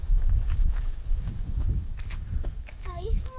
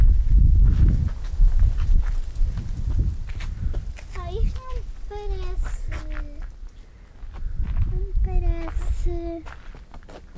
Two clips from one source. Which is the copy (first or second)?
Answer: first